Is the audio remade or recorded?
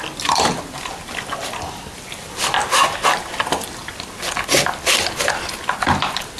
recorded